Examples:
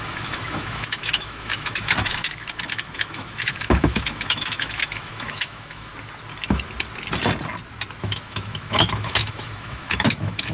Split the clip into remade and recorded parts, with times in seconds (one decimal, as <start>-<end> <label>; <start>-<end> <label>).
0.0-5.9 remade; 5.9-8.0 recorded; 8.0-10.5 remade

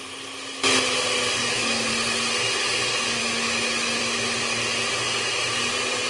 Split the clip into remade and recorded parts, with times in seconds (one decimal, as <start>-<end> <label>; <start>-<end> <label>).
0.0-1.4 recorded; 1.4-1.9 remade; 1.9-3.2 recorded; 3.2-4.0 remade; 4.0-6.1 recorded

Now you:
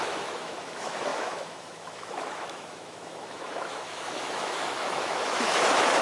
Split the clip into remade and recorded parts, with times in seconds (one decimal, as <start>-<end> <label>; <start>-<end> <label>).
0.0-6.0 remade

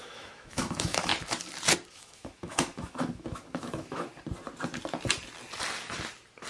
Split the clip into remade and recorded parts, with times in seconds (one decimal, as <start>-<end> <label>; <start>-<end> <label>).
0.0-1.1 remade; 1.1-1.9 recorded; 1.9-4.1 remade; 4.1-6.5 recorded